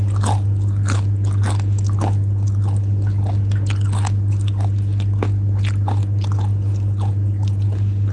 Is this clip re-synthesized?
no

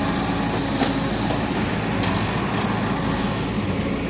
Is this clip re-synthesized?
no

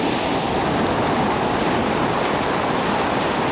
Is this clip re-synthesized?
no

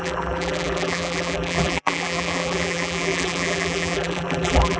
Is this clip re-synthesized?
yes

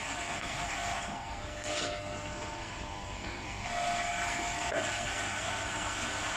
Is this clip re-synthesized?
yes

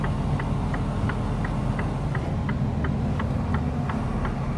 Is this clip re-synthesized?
no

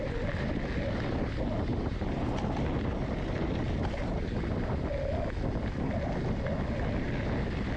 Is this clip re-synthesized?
no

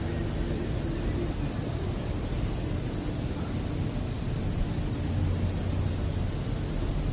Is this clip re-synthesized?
no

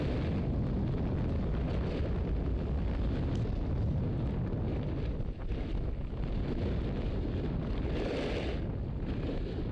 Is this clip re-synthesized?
no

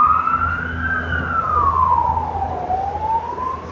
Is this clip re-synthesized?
no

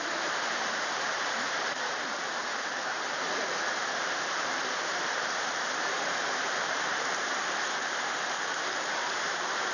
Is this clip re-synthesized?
yes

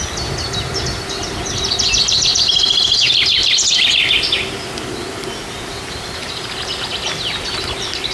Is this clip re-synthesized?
no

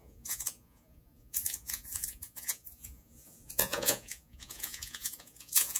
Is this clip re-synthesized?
yes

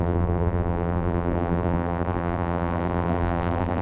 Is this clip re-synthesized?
yes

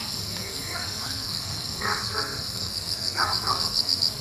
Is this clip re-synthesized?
yes